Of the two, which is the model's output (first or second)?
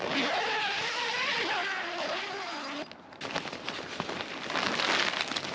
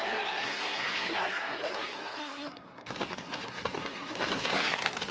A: second